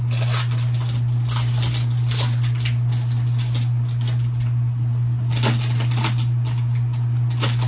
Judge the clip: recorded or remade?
recorded